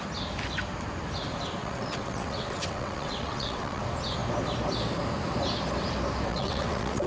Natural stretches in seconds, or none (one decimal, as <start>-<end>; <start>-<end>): 0.0-1.6; 3.8-6.3